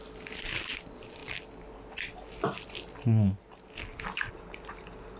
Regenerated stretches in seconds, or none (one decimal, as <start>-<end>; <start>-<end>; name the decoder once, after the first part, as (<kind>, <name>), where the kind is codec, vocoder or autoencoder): none